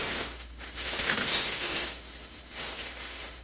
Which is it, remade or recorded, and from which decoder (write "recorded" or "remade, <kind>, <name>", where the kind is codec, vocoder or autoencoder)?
remade, autoencoder, DAC-VAE